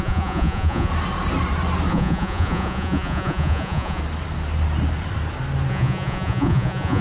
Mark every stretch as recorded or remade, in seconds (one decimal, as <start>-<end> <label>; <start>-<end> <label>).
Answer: 0.0-0.9 remade; 0.9-1.9 recorded; 1.9-4.0 remade; 4.0-5.7 recorded; 5.7-7.0 remade